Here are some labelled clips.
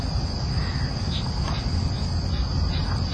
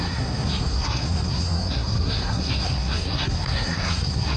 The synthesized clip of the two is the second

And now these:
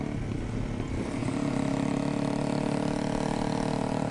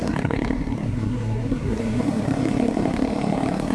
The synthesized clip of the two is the second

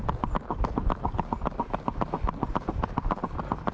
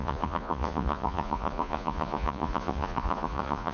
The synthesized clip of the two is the second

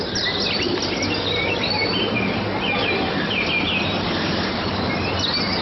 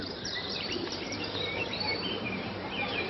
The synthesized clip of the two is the second